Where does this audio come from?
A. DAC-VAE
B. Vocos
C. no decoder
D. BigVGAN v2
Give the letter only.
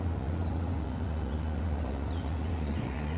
B